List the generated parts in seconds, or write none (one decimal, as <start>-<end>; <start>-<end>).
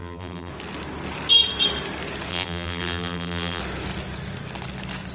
0.0-0.5; 2.3-3.6